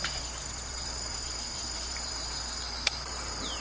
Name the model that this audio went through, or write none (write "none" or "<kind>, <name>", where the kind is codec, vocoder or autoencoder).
vocoder, BigVGAN v2